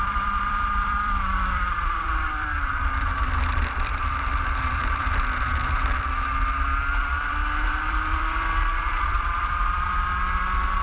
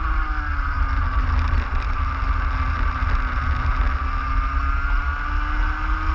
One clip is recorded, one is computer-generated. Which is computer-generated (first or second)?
first